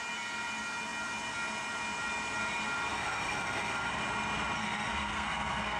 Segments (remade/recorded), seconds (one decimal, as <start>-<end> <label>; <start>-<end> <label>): 0.0-2.9 recorded; 2.9-4.0 remade; 4.0-4.6 recorded; 4.6-5.8 remade